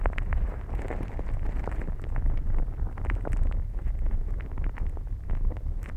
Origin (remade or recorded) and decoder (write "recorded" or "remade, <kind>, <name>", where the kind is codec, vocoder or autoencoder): remade, vocoder, BigVGAN v2